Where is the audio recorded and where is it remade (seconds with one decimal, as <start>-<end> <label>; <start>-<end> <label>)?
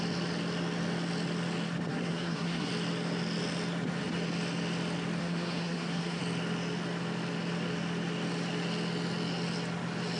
0.0-1.9 recorded; 1.9-2.7 remade; 2.7-5.2 recorded; 5.2-6.2 remade; 6.2-10.2 recorded